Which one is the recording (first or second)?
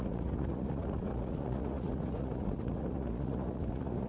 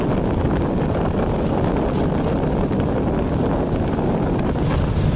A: second